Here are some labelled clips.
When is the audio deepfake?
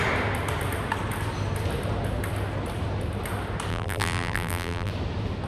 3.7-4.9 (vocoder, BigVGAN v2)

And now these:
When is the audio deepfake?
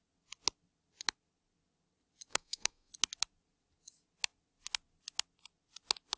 2.3-2.9 (codec, SNAC)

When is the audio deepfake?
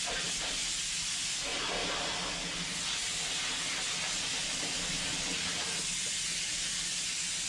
none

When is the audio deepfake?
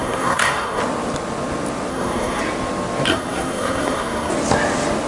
0.0-0.8 (codec, SNAC); 1.9-2.4; 3.1-4.3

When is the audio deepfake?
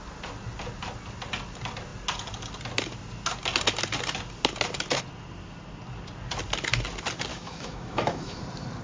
7.3-8.4 (autoencoder, DAC-VAE)